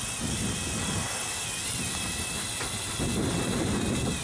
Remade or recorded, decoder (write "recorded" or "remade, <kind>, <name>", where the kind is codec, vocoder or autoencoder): recorded